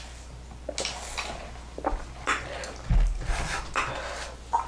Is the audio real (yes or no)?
yes